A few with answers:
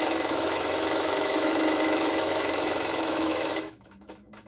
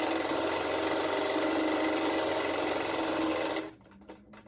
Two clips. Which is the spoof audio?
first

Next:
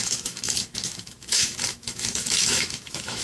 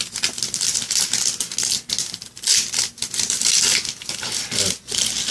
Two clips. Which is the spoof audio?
first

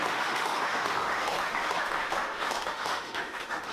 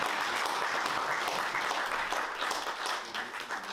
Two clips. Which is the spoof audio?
first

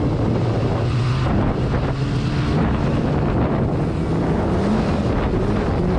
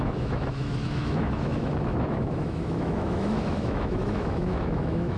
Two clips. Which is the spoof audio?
second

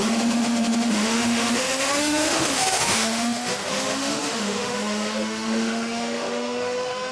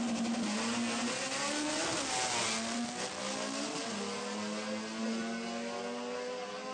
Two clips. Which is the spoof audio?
first